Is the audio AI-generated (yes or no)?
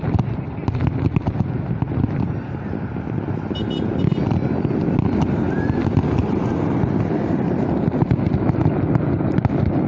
no